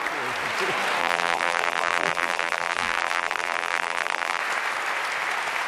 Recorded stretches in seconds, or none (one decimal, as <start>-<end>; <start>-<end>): 0.0-1.0; 4.4-5.7